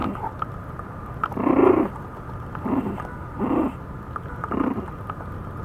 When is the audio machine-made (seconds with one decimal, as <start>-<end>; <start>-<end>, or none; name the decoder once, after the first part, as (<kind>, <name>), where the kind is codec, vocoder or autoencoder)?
1.2-1.6 (vocoder, BigVGAN v2); 5.0-5.6